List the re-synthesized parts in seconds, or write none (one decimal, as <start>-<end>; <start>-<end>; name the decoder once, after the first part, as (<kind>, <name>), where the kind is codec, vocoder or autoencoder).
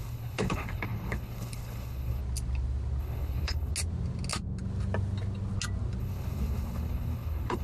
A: 0.0-2.2 (codec, HILCodec); 3.0-3.7; 6.0-7.6